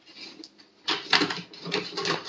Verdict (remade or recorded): recorded